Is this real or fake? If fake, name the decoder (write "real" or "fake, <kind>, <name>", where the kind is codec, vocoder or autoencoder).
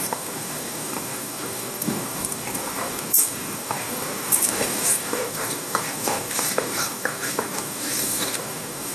fake, codec, DAC